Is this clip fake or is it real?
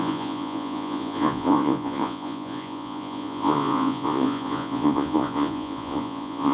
fake